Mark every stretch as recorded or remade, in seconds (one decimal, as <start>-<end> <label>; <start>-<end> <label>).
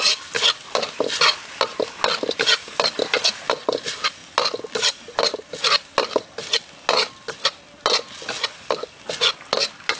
0.0-10.0 recorded